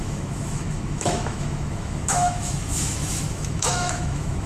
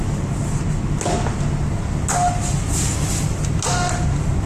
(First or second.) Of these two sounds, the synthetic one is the first